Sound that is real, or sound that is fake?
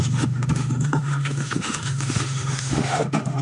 fake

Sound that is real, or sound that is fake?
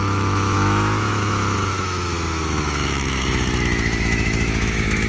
fake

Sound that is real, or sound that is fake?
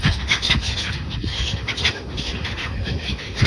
fake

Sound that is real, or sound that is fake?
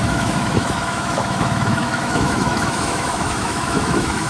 fake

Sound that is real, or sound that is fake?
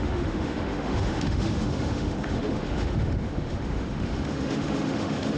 fake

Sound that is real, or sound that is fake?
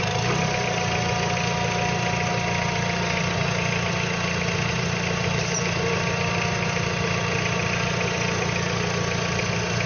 real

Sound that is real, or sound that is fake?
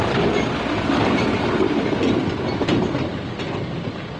real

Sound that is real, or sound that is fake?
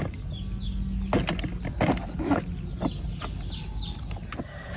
real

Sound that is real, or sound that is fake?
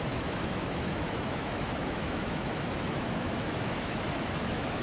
fake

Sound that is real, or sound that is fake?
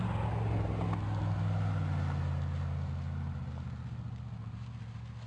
real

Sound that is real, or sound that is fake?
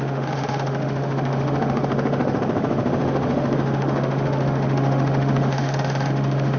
fake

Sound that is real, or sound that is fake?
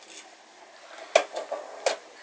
real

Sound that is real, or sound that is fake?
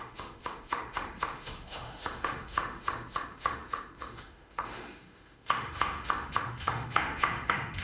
fake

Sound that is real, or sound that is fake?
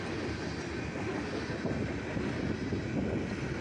real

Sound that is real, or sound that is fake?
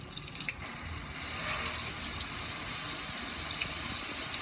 real